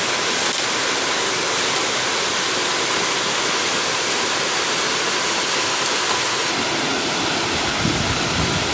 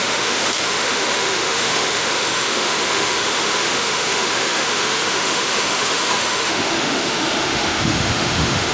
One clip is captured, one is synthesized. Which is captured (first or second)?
first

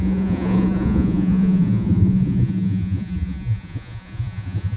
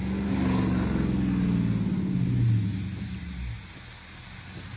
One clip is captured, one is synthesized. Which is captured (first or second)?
second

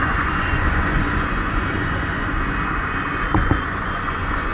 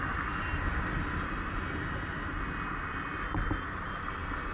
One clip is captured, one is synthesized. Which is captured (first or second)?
second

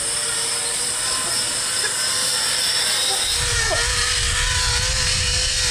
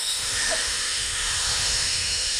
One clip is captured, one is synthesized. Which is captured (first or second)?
first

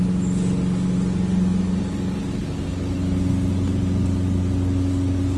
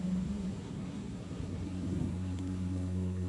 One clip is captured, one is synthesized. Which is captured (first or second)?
first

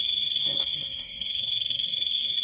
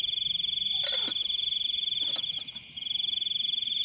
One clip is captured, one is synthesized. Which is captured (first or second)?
second